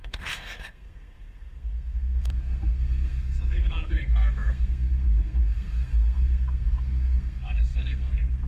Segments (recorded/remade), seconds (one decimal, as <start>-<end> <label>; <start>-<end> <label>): 0.0-8.5 remade